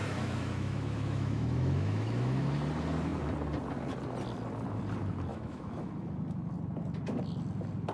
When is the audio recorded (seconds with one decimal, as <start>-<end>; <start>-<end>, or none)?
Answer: 2.5-5.3; 5.9-7.9